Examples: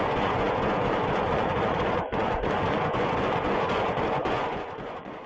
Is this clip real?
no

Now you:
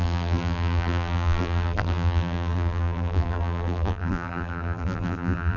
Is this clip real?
no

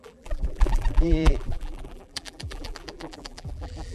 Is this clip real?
no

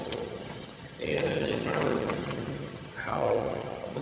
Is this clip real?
no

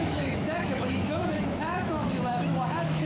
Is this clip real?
no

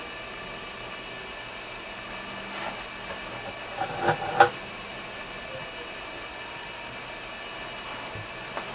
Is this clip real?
yes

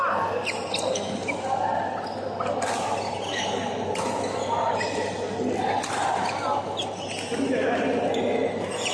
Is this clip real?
yes